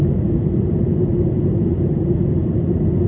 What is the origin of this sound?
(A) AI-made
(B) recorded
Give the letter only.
B